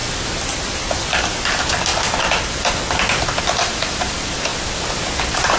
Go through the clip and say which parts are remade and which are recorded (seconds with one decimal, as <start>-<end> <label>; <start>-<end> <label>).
0.0-0.7 recorded; 0.7-4.5 remade; 4.5-5.6 recorded